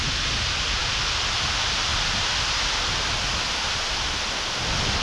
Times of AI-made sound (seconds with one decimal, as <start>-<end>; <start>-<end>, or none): none